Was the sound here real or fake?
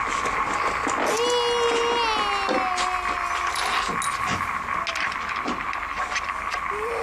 real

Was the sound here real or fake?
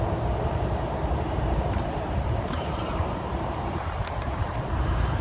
fake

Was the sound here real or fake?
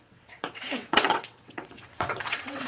fake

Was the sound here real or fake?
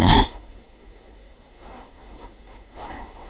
fake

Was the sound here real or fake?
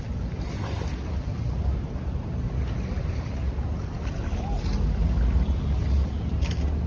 real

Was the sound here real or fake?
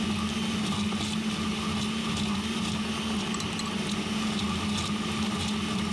real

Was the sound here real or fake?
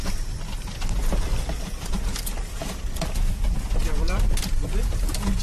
real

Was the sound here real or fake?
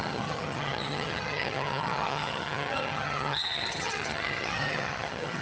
fake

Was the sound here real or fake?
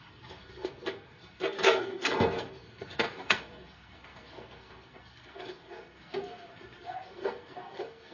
fake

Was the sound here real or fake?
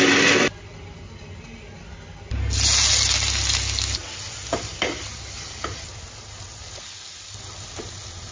real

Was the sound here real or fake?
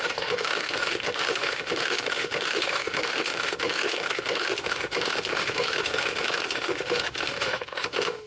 fake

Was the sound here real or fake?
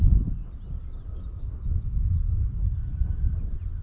real